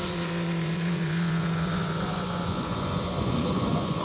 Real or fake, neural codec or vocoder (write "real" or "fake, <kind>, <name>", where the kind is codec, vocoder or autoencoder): fake, vocoder, Vocos